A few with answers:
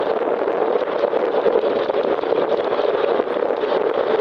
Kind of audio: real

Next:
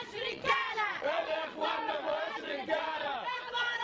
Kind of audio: fake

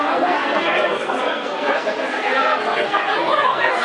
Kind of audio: fake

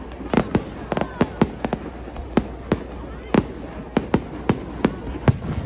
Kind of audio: real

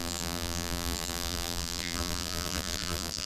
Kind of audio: fake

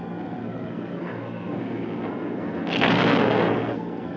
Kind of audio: fake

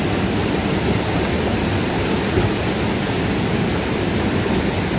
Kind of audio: real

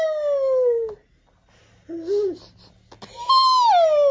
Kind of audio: real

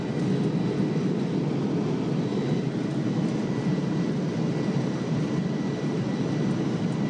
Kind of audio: real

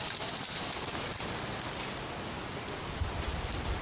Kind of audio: real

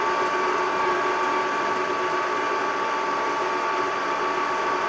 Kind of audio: real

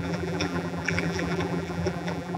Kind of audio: fake